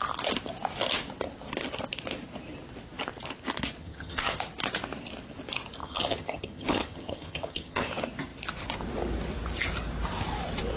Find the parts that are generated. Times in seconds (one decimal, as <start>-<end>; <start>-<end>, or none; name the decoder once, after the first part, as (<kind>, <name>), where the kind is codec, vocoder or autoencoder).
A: 3.8-4.4 (vocoder, HiFi-GAN); 5.8-7.9